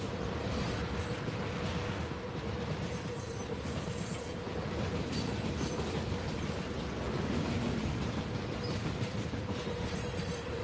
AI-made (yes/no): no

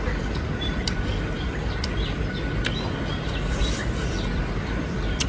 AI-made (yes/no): no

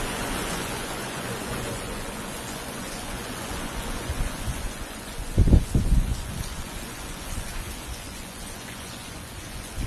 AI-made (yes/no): yes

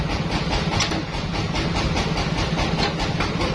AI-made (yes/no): no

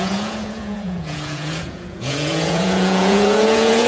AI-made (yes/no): yes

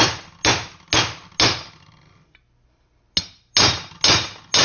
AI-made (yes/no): no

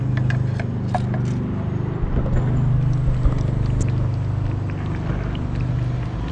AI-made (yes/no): no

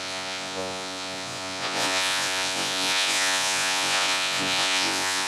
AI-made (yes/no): yes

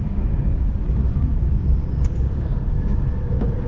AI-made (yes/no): yes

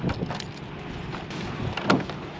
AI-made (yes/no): no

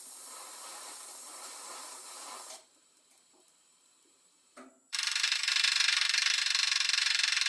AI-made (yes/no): yes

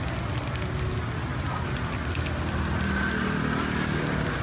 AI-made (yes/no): no